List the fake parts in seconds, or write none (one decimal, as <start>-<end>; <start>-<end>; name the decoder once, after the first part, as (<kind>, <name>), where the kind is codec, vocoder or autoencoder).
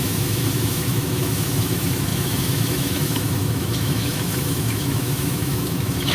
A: 0.0-6.1 (autoencoder, DAC-VAE)